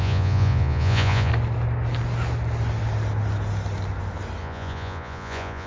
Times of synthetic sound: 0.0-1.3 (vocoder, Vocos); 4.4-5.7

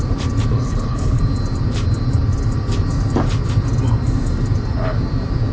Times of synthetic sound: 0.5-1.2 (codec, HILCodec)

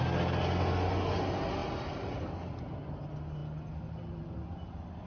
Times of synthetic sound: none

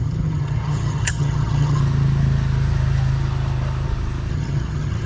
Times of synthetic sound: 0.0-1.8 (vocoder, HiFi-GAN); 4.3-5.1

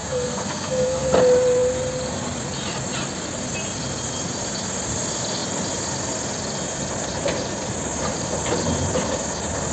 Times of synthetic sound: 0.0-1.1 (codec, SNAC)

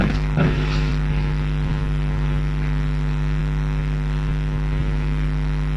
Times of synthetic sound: 0.0-5.8 (autoencoder, DAC-VAE)

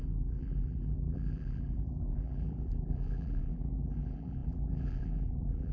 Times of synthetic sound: 0.0-5.7 (vocoder, BigVGAN v2)

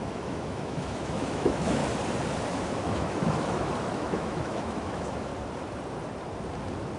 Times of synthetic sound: 0.0-1.8 (autoencoder, DAC-VAE); 2.5-5.3